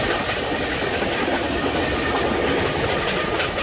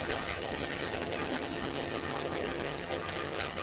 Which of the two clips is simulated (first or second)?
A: second